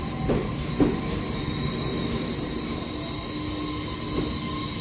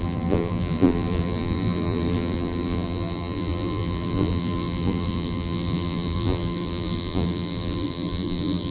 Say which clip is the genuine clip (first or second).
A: first